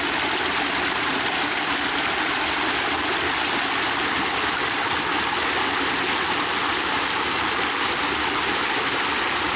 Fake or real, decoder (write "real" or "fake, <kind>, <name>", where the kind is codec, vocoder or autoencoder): real